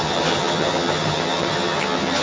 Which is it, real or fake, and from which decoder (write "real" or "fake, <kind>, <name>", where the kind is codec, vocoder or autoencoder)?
fake, vocoder, HiFi-GAN